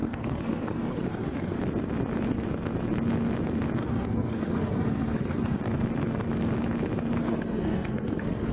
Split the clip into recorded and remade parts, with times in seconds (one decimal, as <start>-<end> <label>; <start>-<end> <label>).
0.0-1.6 remade; 1.6-3.8 recorded; 3.8-5.6 remade; 5.6-7.2 recorded; 7.2-8.5 remade

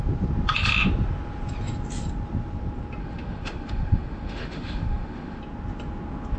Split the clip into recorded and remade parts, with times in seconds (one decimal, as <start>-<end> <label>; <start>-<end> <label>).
0.0-3.0 recorded; 3.0-5.4 remade; 5.4-6.4 recorded

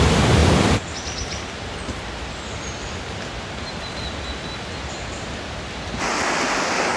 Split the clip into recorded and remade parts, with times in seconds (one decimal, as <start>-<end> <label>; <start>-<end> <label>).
0.0-7.0 recorded

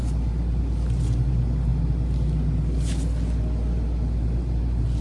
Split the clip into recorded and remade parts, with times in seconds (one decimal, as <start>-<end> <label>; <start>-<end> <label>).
0.0-5.0 recorded

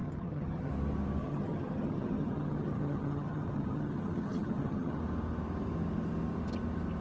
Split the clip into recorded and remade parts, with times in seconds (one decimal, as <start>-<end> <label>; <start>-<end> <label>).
0.0-0.7 remade; 0.7-1.2 recorded; 1.2-5.0 remade; 5.0-7.0 recorded

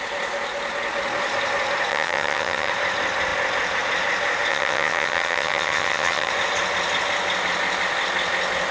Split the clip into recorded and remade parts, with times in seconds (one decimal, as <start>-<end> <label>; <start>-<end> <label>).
0.0-1.9 recorded; 1.9-2.7 remade; 2.7-4.5 recorded; 4.5-6.3 remade; 6.3-8.7 recorded

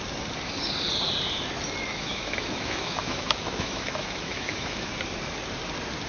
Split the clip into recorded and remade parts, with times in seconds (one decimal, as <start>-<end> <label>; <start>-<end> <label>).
0.0-1.9 recorded; 1.9-4.9 remade; 4.9-6.1 recorded

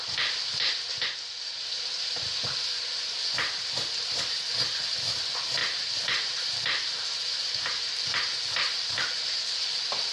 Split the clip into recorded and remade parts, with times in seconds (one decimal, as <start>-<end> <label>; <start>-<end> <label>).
0.0-5.6 recorded; 5.6-9.2 remade; 9.2-10.1 recorded